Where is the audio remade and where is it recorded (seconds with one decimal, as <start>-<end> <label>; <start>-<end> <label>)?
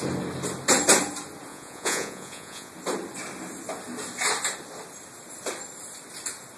0.0-1.5 recorded; 1.5-2.7 remade; 2.7-6.6 recorded